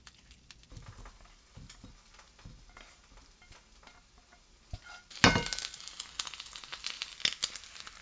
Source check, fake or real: real